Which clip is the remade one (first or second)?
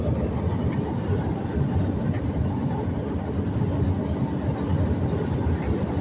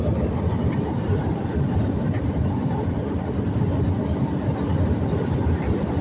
second